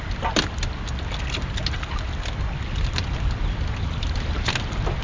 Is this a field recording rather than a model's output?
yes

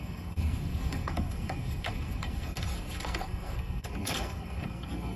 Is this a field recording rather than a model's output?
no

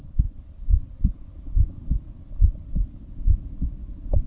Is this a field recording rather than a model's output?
yes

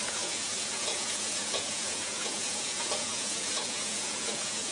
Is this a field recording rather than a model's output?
no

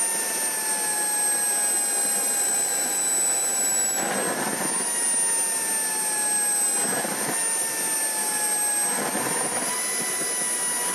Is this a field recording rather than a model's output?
yes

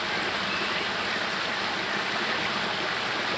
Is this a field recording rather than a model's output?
yes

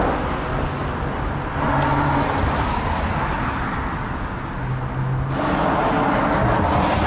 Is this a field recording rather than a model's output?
yes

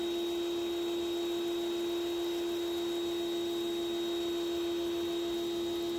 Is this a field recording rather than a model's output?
yes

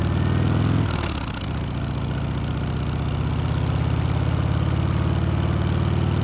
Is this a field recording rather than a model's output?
yes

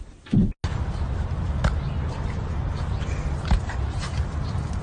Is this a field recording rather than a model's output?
yes